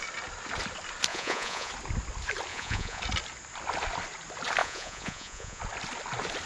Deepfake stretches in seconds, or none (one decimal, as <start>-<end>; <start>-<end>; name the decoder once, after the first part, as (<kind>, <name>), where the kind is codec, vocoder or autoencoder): 1.1-1.7 (vocoder, Vocos); 2.5-3.0; 4.6-5.6